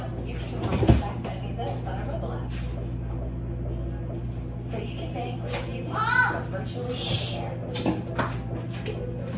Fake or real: real